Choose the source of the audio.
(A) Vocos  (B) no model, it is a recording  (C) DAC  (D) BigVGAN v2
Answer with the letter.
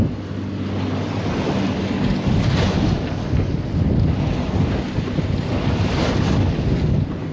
B